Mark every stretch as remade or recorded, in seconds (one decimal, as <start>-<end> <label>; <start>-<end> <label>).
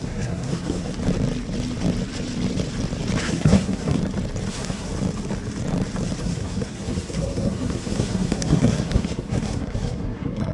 0.0-0.9 remade; 0.9-3.2 recorded; 3.2-4.0 remade; 4.0-4.5 recorded; 4.5-4.9 remade; 4.9-6.2 recorded; 6.2-10.5 remade